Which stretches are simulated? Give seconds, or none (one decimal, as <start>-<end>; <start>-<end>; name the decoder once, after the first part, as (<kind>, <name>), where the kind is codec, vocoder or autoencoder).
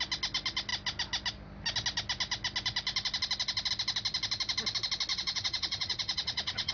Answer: 5.1-6.7 (vocoder, Vocos)